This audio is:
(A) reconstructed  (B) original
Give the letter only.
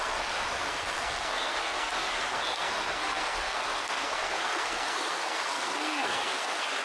A